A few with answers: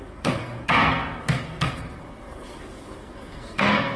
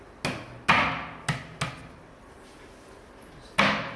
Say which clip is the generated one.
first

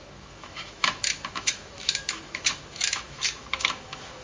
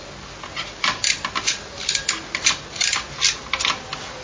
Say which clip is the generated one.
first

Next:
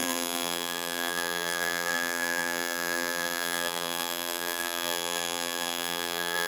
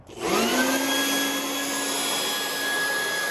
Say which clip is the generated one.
first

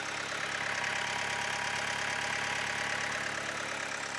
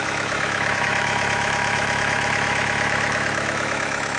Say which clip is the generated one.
second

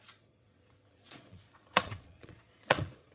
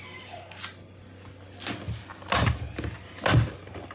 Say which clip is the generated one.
first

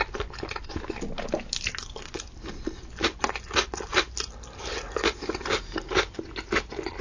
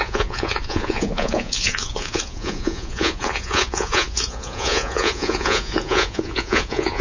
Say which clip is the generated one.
second